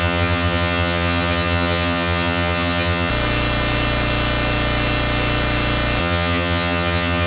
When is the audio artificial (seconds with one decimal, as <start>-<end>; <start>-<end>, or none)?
0.0-3.1; 6.0-7.3